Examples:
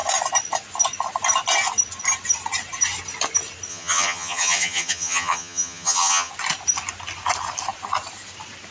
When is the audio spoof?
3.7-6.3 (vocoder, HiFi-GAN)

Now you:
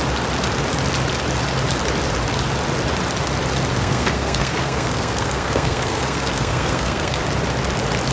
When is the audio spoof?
3.7-7.2 (codec, SNAC)

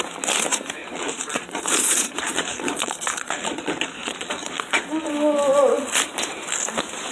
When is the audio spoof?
0.8-5.1 (vocoder, Vocos)